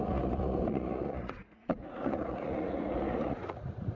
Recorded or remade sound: remade